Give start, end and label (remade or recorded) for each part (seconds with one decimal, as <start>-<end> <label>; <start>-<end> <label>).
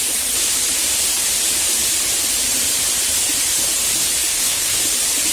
0.0-4.3 recorded; 4.3-4.8 remade; 4.8-5.3 recorded